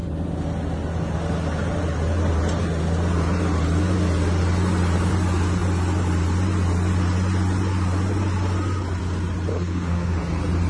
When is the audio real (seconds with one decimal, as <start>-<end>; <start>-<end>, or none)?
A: 0.0-9.5; 10.2-10.7